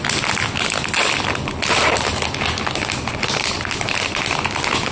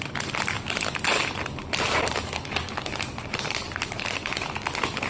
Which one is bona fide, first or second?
first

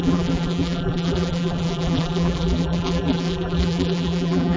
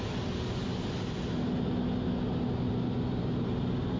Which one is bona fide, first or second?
second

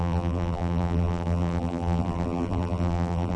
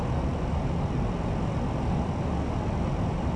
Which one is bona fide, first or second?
second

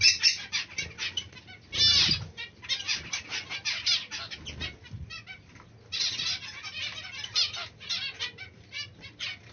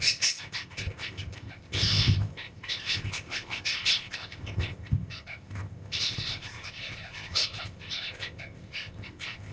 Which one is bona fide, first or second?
first